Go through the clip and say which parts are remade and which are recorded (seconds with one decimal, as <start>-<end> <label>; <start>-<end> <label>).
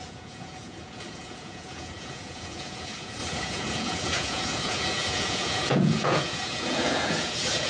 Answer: 0.0-7.7 remade